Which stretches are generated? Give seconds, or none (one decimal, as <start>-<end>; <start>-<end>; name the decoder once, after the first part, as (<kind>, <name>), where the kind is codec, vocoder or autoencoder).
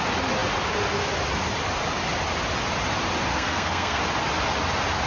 3.3-4.0 (codec, SNAC)